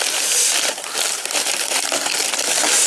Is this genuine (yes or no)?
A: yes